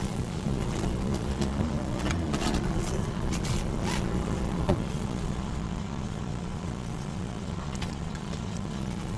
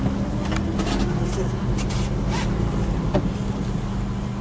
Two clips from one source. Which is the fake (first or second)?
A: first